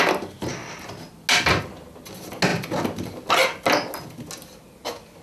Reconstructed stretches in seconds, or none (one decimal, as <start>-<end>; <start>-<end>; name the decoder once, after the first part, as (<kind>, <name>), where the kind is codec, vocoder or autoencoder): none